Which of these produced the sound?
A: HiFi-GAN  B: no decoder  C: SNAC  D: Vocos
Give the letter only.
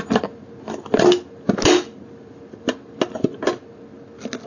B